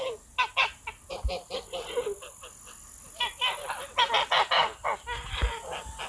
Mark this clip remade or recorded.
recorded